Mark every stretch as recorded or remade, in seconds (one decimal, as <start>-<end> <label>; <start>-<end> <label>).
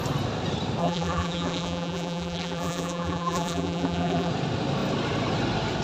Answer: 0.0-0.8 recorded; 0.8-4.3 remade; 4.3-5.8 recorded